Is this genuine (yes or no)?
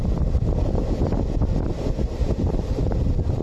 no